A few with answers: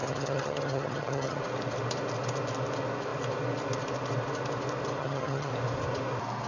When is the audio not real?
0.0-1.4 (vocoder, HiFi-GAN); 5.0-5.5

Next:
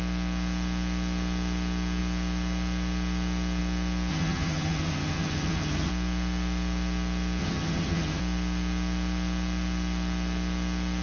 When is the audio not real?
4.1-5.9 (vocoder, HiFi-GAN); 7.4-8.2